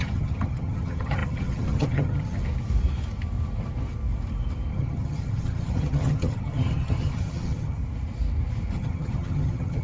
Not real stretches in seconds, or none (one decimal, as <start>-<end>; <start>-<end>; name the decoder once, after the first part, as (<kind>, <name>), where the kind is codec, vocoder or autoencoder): 0.0-2.4 (vocoder, HiFi-GAN); 4.7-7.8; 8.7-9.8